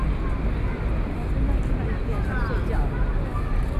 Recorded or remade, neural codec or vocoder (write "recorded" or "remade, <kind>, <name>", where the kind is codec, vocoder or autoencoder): recorded